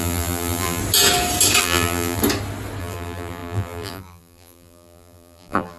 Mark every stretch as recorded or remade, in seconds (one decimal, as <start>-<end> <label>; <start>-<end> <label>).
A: 0.0-0.8 remade; 0.8-1.6 recorded; 1.6-2.2 remade; 2.2-2.8 recorded; 2.8-5.8 remade